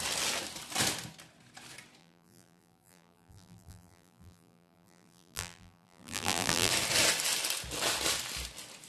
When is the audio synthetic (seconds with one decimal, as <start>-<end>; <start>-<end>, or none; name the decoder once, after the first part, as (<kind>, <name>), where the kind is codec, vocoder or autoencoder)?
2.0-6.7 (vocoder, BigVGAN v2)